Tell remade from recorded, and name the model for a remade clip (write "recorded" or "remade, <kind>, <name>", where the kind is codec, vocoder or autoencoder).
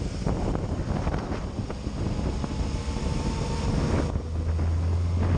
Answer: recorded